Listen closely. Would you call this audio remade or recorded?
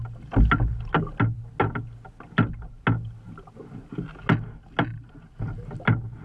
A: recorded